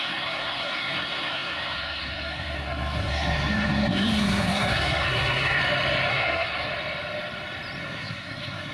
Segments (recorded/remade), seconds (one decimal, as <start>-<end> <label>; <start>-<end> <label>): 0.0-5.6 remade; 5.6-6.1 recorded; 6.1-6.7 remade; 6.7-7.8 recorded; 7.8-8.7 remade